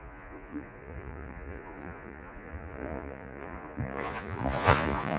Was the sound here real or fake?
fake